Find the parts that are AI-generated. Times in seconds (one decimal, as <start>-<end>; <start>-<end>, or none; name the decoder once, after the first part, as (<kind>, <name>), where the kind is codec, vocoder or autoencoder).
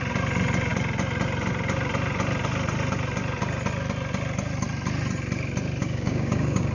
5.8-6.7 (codec, DAC)